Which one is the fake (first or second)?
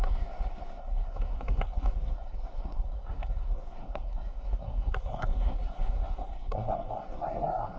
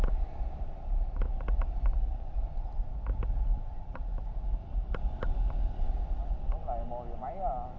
first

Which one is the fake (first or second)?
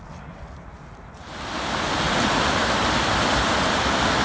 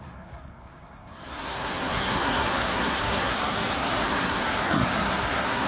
second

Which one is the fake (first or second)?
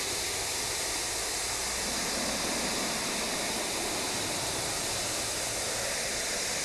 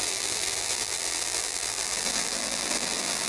second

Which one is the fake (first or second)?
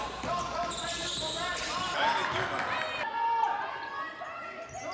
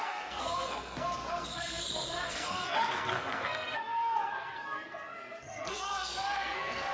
second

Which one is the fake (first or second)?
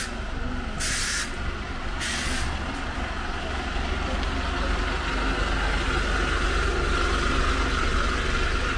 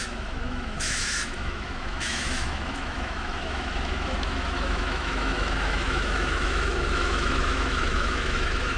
second